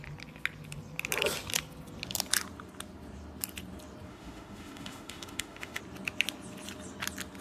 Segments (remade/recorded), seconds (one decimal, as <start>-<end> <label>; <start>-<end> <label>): 0.0-4.1 recorded; 4.1-5.8 remade; 5.8-7.4 recorded